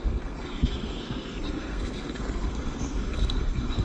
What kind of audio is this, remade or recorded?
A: remade